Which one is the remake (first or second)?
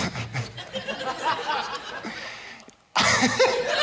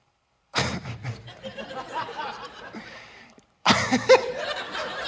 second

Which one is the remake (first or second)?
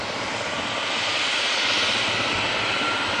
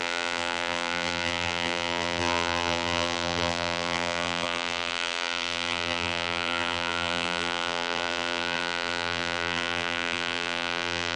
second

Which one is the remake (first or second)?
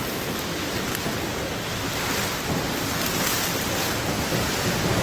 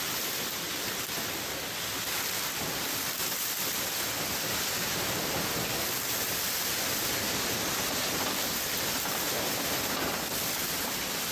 second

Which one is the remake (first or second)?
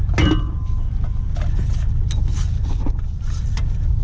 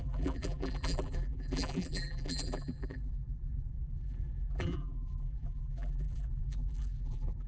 second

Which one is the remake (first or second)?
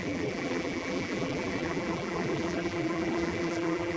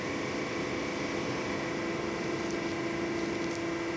first